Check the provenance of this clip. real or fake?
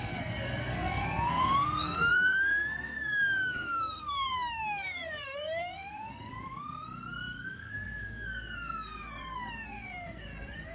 fake